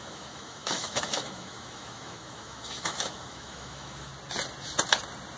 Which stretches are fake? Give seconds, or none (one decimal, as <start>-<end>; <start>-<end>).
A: 0.0-4.1